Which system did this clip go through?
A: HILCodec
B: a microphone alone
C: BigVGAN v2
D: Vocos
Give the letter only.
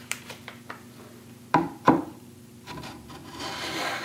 C